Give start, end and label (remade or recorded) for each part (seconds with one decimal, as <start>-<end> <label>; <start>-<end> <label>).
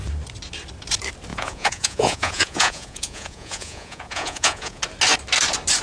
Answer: 0.0-1.3 recorded; 1.3-4.8 remade; 4.8-5.8 recorded